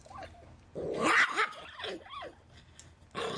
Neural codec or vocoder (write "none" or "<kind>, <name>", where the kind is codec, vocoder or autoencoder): none